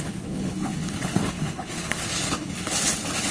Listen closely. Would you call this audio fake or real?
fake